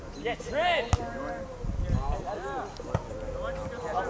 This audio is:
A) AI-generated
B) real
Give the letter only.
B